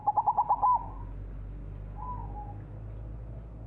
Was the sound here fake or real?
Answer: real